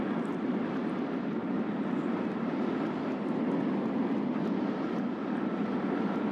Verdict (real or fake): real